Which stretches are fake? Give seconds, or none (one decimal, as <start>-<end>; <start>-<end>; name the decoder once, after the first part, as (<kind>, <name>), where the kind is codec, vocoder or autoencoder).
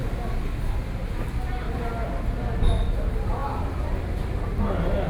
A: none